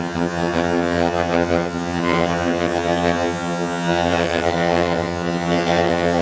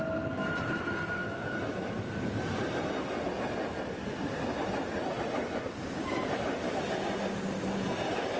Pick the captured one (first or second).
second